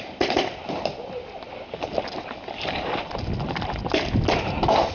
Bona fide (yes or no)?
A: yes